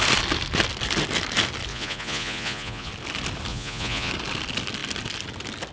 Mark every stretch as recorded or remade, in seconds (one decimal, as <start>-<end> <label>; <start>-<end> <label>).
0.0-1.7 recorded; 1.7-2.9 remade; 2.9-3.5 recorded; 3.5-4.1 remade; 4.1-5.7 recorded